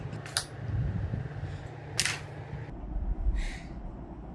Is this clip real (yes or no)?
yes